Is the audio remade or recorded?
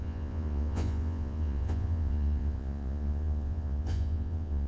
remade